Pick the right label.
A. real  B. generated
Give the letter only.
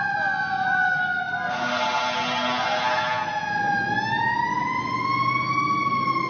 A